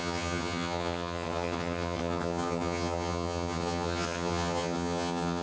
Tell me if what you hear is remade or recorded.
remade